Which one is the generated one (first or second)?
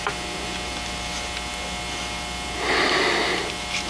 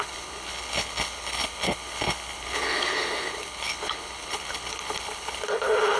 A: second